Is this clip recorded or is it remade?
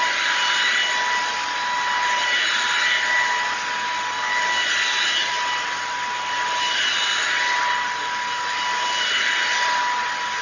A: recorded